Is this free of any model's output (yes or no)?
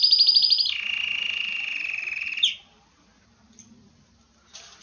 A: yes